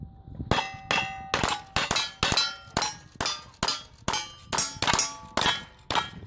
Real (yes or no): yes